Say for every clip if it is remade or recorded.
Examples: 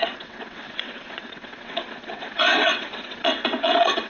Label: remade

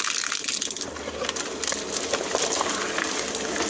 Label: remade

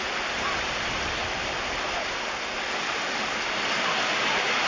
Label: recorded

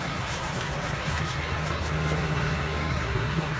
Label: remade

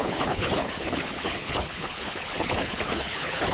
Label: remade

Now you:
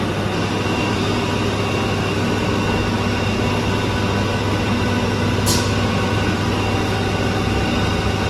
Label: recorded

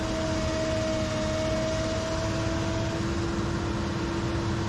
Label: recorded